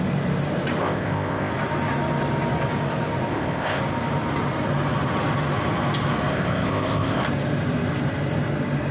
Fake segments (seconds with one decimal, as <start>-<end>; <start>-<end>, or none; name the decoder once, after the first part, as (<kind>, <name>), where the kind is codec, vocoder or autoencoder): 0.8-1.5 (codec, ZipCodec); 3.3-3.8; 6.3-7.2